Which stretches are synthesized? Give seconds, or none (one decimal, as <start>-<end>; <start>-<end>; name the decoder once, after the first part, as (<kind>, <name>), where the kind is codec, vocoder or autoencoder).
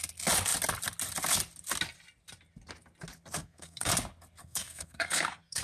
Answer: 3.4-3.9 (codec, SNAC); 4.4-5.6